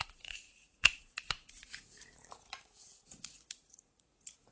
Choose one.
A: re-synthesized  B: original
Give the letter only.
A